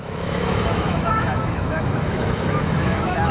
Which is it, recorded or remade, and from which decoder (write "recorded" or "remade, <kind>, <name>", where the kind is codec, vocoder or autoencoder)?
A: remade, autoencoder, DAC-VAE